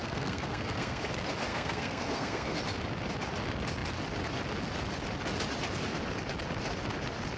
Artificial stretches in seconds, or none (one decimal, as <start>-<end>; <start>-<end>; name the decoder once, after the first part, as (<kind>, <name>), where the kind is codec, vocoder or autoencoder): 0.0-1.0 (codec, SNAC); 1.5-2.6